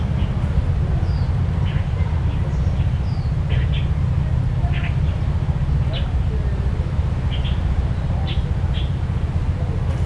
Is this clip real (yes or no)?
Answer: yes